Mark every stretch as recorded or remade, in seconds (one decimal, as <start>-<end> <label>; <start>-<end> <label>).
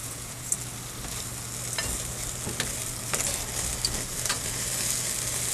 0.0-0.5 remade; 0.5-5.5 recorded